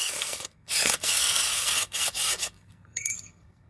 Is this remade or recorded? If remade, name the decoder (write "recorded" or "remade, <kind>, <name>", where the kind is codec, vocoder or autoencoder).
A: remade, codec, SNAC